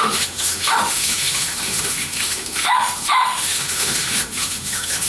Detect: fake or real fake